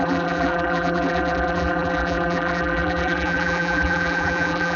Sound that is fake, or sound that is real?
fake